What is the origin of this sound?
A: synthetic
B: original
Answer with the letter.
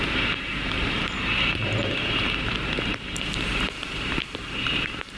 A